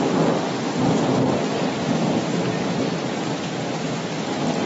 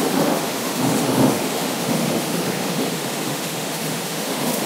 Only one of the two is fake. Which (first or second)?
second